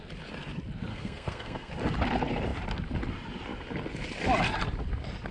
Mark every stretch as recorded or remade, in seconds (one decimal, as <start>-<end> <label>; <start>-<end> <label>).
0.0-0.9 recorded; 0.9-1.7 remade; 1.7-5.3 recorded